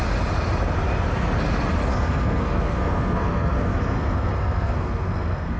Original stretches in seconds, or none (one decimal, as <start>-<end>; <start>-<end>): 0.0-1.9